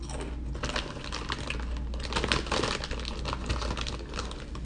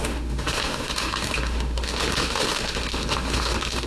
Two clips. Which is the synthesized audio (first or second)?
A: second